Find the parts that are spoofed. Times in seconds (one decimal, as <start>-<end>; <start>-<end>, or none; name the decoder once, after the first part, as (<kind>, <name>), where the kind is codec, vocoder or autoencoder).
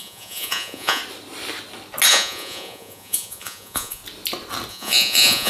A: 0.0-1.0 (vocoder, Vocos); 2.1-4.0; 4.7-5.5